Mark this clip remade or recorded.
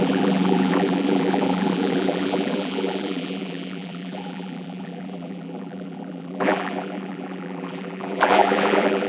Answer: remade